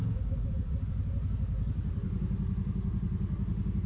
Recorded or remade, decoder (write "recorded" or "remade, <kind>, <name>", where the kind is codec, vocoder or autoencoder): recorded